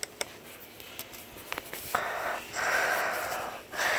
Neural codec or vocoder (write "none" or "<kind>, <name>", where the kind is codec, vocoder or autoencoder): none